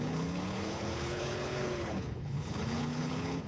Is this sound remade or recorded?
remade